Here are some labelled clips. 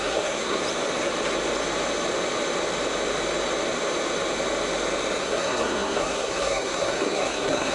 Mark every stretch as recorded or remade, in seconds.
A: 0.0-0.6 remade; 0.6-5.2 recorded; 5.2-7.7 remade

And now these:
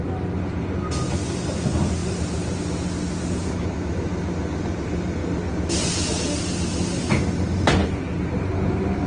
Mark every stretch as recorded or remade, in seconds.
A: 0.0-9.1 recorded